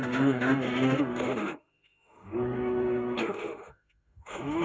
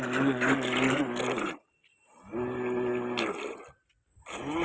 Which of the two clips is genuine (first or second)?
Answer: second